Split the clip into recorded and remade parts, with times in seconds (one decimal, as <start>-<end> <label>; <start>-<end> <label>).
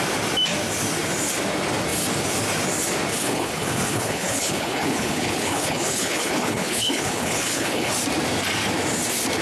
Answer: 0.0-3.1 recorded; 3.1-7.9 remade; 7.9-9.4 recorded